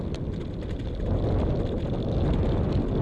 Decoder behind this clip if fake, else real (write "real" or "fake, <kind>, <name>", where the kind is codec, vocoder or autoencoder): real